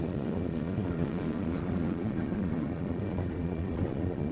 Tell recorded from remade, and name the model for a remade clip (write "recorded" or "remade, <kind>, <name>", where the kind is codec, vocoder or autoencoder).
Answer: remade, vocoder, Vocos